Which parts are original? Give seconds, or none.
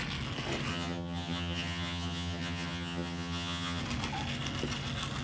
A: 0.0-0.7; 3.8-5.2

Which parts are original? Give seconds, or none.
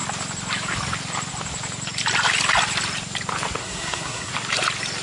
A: 0.0-3.6; 4.3-5.0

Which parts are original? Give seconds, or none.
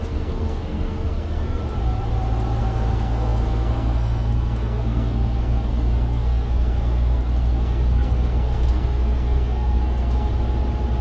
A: 1.6-2.6; 10.3-11.0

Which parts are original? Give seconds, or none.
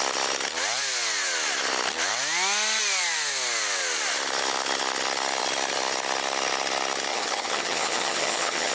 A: 0.0-7.1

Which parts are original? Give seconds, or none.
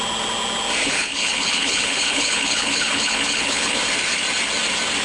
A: 0.0-0.8; 3.8-5.0